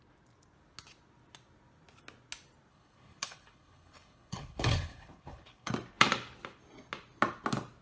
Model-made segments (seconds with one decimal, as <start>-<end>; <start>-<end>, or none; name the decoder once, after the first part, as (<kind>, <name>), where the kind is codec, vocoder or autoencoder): 2.7-5.7 (codec, HILCodec)